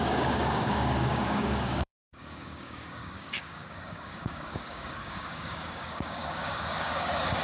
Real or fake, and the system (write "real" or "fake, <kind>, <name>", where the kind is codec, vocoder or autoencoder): fake, codec, DAC